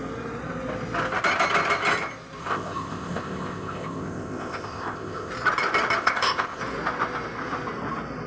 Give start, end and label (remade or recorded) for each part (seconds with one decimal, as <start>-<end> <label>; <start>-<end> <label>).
0.0-2.4 recorded; 2.4-5.3 remade; 5.3-6.0 recorded; 6.0-6.6 remade; 6.6-8.3 recorded